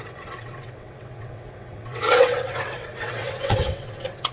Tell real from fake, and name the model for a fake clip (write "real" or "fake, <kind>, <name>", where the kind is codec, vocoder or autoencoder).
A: fake, vocoder, WaveNeXt